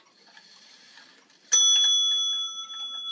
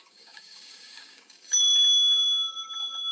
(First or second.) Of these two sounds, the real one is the first